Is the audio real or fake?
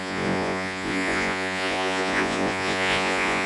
fake